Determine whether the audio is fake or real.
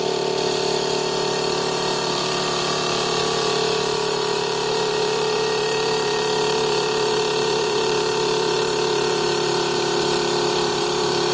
fake